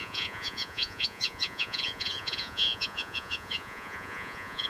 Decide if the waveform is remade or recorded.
remade